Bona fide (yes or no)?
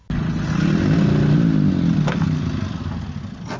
yes